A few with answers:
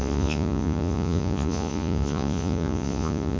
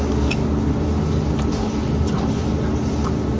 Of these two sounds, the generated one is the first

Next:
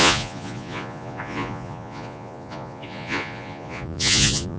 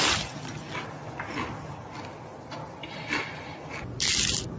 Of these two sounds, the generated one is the first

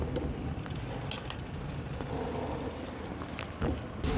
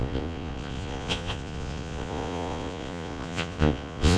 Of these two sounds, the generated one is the second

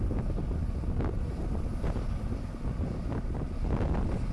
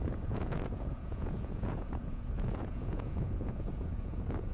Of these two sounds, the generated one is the second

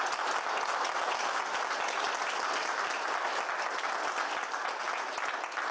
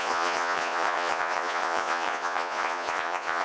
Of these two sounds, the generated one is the second